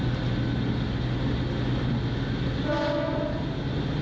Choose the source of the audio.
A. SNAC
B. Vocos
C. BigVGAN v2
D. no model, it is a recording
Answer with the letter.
D